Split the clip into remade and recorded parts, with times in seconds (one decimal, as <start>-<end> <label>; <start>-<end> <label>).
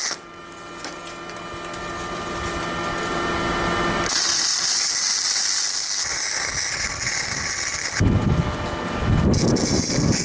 0.0-10.2 recorded